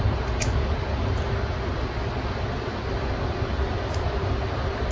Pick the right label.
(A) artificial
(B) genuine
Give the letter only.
B